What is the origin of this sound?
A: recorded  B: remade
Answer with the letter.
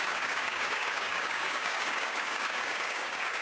B